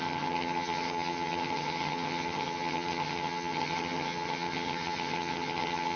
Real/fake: fake